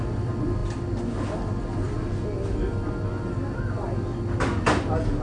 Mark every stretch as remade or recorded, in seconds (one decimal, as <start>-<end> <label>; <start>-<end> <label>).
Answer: 0.0-5.2 recorded